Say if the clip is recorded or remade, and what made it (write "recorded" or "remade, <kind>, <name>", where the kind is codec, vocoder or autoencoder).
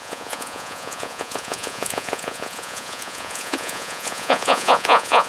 remade, vocoder, Vocos